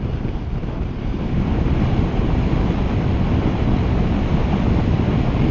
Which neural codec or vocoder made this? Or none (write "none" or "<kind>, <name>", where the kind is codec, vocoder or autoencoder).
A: none